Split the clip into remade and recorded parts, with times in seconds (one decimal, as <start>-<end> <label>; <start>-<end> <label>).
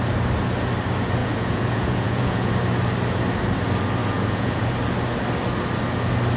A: 0.0-1.2 recorded; 1.2-2.5 remade; 2.5-4.0 recorded; 4.0-4.7 remade; 4.7-6.4 recorded